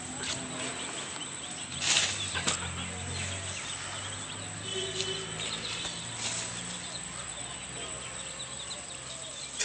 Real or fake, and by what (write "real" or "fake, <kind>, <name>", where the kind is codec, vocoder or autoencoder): real